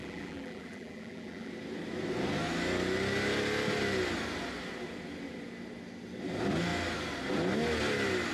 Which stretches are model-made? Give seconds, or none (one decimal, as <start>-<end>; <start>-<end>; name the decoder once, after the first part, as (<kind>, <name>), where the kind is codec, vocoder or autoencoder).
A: 0.0-1.5 (vocoder, BigVGAN v2)